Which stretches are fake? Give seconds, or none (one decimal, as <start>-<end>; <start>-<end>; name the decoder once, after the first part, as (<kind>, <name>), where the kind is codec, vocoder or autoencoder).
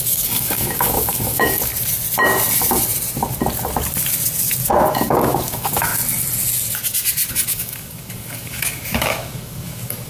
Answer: 0.0-1.7 (codec, DAC); 4.9-5.9; 7.3-10.1